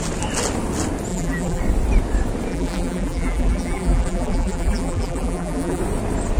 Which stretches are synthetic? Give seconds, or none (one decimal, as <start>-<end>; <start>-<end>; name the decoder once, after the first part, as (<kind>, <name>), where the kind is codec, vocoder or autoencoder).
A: 1.1-1.6 (vocoder, BigVGAN v2); 2.5-5.8